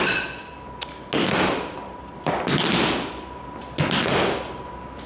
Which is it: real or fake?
real